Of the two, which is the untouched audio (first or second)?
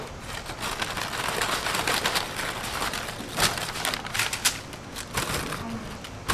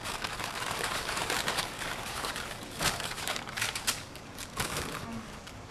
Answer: first